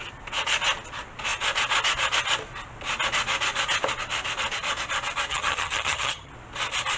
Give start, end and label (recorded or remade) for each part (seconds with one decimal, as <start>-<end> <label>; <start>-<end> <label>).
0.0-5.3 recorded; 5.3-6.3 remade; 6.3-7.0 recorded